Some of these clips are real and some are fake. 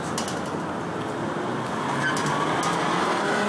real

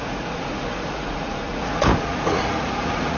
fake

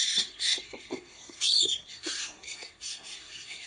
fake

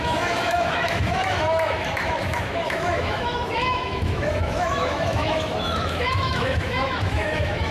fake